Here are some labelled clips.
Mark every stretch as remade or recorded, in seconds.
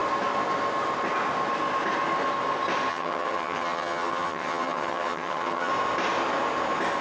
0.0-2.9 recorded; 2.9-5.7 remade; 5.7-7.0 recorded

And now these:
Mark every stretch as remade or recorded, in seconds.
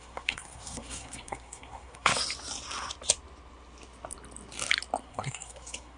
0.0-2.1 remade; 2.1-5.0 recorded; 5.0-6.0 remade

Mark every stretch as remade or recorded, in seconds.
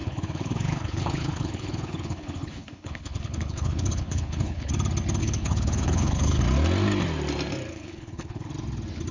0.0-4.7 remade; 4.7-5.2 recorded; 5.2-6.4 remade; 6.4-7.7 recorded; 7.7-8.5 remade; 8.5-9.1 recorded